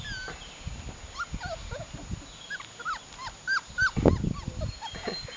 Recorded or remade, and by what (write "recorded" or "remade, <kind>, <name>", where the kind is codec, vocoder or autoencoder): recorded